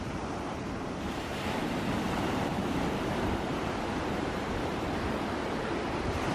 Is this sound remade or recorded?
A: remade